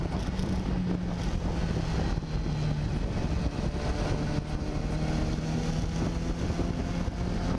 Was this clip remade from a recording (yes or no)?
no